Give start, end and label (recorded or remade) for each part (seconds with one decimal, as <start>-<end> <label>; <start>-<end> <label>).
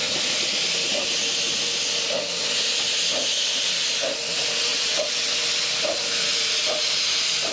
0.0-4.7 recorded; 4.7-5.3 remade; 5.3-7.5 recorded